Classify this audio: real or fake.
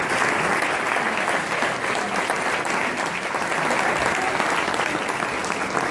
real